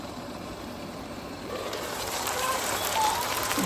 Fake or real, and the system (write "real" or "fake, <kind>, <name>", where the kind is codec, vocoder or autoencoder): fake, vocoder, BigVGAN v2